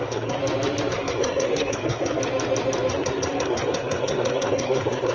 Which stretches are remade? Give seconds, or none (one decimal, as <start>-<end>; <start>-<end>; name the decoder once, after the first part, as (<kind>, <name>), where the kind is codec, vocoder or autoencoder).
0.0-0.4 (codec, SNAC); 0.9-2.2; 2.9-5.1

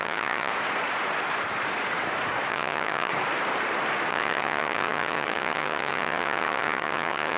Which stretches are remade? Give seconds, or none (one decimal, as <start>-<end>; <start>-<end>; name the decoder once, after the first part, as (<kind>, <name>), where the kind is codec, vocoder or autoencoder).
0.0-0.5 (vocoder, HiFi-GAN); 2.5-3.1; 4.1-7.4

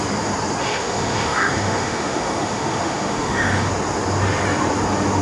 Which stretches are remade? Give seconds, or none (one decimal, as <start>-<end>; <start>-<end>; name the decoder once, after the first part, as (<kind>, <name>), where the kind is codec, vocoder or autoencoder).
0.6-3.7 (autoencoder, DAC-VAE)

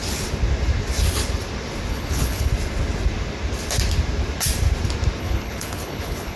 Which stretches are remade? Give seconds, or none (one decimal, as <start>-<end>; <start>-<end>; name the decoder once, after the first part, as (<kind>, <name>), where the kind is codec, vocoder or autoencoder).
1.9-2.5 (codec, HILCodec); 5.2-6.4

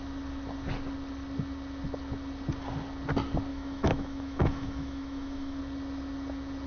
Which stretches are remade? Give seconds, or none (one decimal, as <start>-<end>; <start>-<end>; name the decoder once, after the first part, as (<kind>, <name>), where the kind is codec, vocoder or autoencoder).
3.5-5.6 (autoencoder, DAC-VAE)

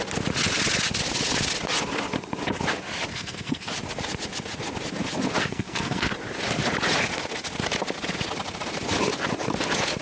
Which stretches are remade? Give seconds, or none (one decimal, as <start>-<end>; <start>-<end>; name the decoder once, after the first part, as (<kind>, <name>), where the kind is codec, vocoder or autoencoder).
3.1-3.7 (codec, SNAC); 5.4-6.1

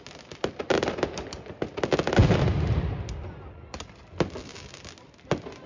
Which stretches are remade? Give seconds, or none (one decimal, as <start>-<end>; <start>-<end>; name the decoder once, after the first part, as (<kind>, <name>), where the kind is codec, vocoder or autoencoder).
none